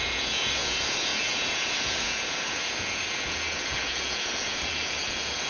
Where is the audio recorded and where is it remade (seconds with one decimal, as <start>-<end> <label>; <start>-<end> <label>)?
0.0-5.5 remade